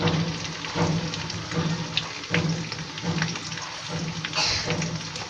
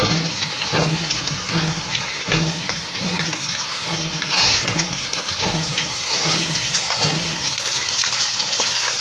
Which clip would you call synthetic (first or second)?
second